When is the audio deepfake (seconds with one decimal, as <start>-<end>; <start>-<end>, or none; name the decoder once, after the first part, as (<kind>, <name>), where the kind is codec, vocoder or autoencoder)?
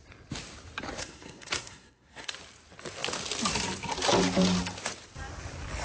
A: 1.0-2.3 (codec, SNAC)